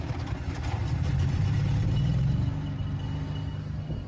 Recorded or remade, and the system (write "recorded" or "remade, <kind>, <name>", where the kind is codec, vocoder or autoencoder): recorded